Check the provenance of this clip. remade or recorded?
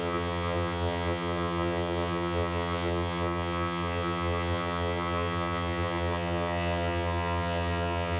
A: remade